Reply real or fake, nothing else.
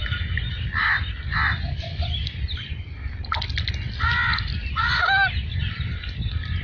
real